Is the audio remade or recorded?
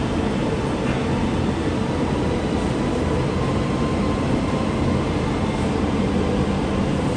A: recorded